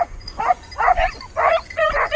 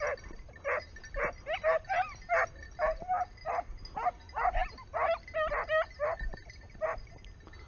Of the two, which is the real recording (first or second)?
second